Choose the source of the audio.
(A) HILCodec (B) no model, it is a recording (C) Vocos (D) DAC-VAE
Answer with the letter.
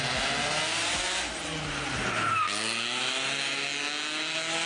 B